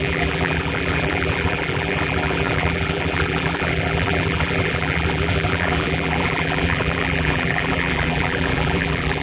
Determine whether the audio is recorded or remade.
remade